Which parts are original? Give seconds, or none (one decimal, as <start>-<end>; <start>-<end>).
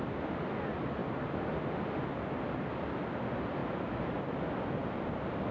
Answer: 0.0-5.5